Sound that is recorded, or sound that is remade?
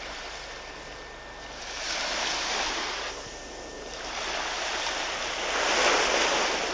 recorded